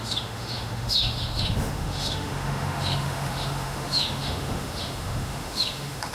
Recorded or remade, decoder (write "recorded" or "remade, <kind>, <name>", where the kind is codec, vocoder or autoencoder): remade, autoencoder, DAC-VAE